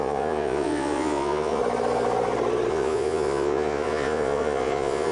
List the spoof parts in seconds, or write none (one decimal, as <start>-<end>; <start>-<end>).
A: 0.0-1.6; 2.7-5.1